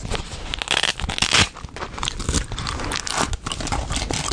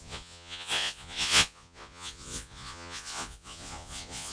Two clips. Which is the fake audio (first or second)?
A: second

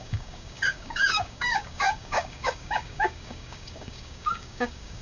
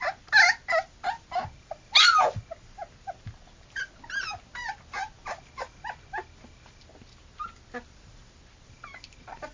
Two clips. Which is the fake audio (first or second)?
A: first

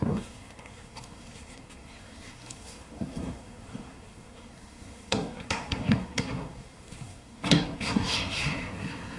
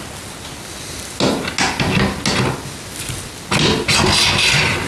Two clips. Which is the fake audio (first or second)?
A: first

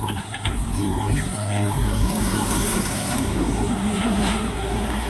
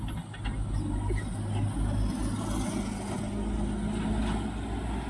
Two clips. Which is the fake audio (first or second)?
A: first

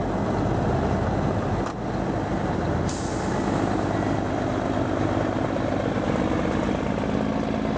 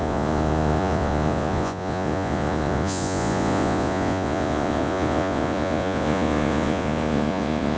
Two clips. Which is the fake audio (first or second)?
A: second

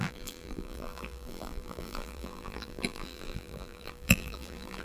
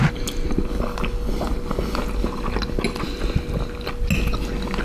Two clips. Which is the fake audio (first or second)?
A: first